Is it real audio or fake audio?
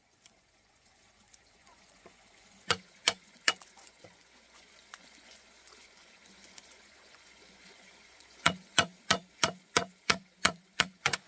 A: fake